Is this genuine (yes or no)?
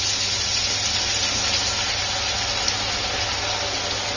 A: yes